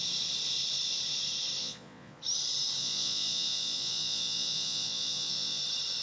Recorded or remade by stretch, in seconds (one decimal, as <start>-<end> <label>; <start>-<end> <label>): 0.0-1.6 recorded; 1.6-2.2 remade; 2.2-2.8 recorded; 2.8-5.6 remade; 5.6-6.0 recorded